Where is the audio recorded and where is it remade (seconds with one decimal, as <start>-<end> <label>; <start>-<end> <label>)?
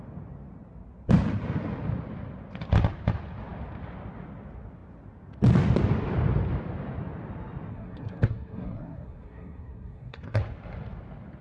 0.0-7.7 recorded; 7.7-10.4 remade; 10.4-11.4 recorded